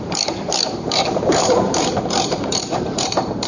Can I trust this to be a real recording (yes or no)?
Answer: no